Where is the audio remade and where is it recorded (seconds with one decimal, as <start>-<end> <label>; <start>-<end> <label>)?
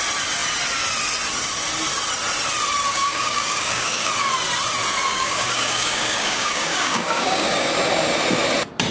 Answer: 0.0-2.9 recorded; 2.9-4.1 remade; 4.1-5.1 recorded; 5.1-7.7 remade; 7.7-8.9 recorded